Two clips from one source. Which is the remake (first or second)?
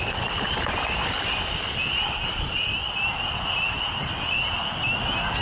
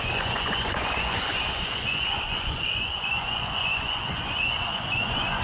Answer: second